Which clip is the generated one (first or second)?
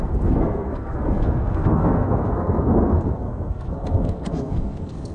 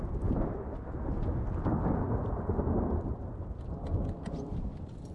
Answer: first